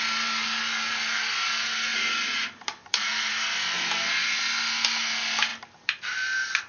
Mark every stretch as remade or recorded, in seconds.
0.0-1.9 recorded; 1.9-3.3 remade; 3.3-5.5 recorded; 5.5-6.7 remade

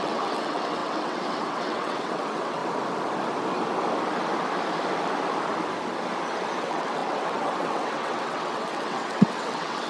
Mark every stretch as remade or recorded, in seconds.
0.0-2.6 remade; 2.6-6.6 recorded; 6.6-9.9 remade

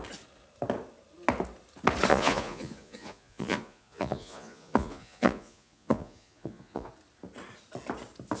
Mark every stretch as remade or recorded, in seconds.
0.0-2.1 recorded; 2.1-6.9 remade; 6.9-8.4 recorded